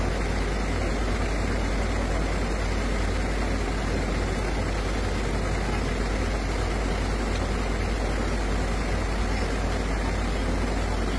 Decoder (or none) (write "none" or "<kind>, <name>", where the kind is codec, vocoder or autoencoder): none